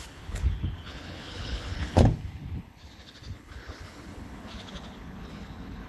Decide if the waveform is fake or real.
fake